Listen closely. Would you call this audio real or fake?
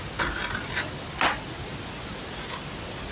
real